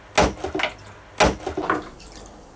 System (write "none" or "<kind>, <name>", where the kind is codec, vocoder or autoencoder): none